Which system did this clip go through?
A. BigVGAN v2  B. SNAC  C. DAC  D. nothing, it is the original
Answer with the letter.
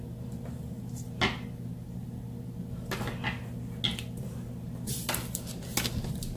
D